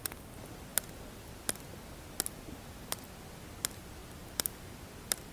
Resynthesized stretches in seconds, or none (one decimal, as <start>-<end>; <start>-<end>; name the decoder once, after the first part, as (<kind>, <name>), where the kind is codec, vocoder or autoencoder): none